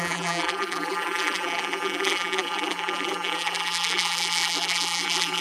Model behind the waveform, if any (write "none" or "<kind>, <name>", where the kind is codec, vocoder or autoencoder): vocoder, BigVGAN v2